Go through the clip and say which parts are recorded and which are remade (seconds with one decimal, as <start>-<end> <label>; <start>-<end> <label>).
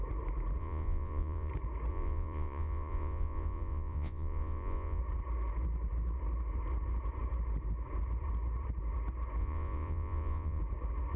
0.0-0.6 recorded; 0.6-1.5 remade; 1.5-1.9 recorded; 1.9-5.0 remade; 5.0-9.4 recorded; 9.4-10.6 remade; 10.6-11.2 recorded